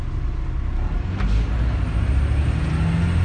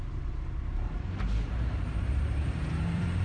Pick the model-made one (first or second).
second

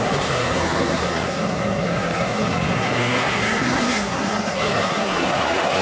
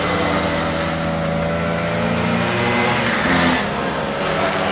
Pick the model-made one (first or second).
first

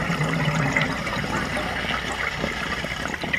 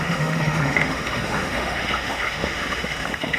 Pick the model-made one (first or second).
second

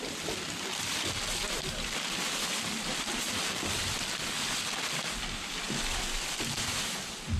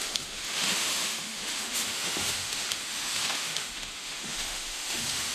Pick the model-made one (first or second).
second